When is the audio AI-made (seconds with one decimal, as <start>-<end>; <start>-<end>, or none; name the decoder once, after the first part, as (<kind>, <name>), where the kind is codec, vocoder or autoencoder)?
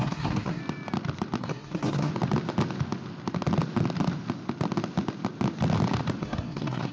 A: 0.0-0.6 (codec, SNAC); 1.4-2.1; 6.2-6.9